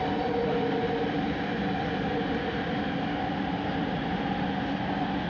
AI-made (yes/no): no